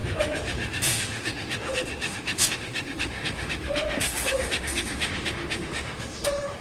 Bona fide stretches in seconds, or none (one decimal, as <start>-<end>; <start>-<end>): none